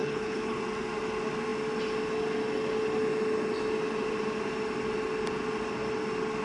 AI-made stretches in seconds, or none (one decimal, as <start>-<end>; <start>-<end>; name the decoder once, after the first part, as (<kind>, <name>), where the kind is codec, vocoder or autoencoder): 0.0-0.6 (codec, HILCodec)